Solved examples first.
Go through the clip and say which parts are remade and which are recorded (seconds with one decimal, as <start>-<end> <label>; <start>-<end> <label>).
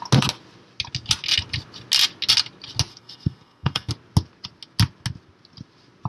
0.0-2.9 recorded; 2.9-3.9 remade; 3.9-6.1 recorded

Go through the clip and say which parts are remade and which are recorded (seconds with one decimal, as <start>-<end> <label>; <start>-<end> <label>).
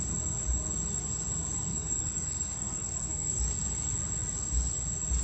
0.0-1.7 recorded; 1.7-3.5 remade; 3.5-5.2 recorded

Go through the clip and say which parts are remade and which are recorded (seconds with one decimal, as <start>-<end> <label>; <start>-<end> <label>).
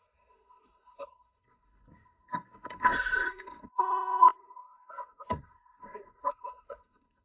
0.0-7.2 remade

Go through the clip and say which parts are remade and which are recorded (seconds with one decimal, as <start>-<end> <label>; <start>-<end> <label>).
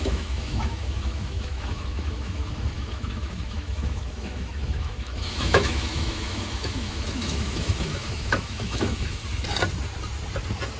0.0-9.2 remade; 9.2-10.8 recorded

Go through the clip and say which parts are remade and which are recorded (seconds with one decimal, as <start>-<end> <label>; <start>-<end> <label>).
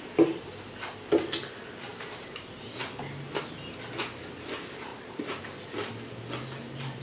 0.0-1.9 recorded; 1.9-3.0 remade; 3.0-4.9 recorded; 4.9-5.4 remade; 5.4-7.0 recorded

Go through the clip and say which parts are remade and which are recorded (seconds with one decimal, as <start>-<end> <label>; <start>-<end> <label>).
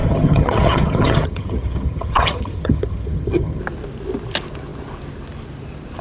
0.0-3.6 remade; 3.6-6.0 recorded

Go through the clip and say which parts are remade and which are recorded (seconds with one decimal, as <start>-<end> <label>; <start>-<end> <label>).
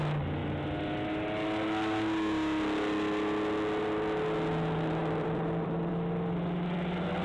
0.0-5.0 recorded; 5.0-5.9 remade; 5.9-7.2 recorded